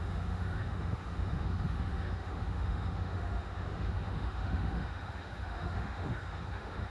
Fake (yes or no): yes